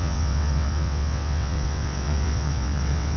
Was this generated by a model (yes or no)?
yes